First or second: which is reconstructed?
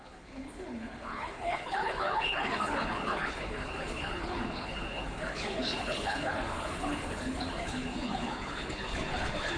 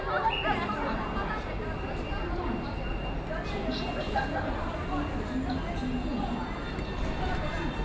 first